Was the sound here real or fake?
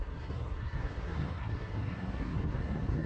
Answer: fake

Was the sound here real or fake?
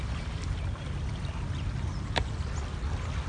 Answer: real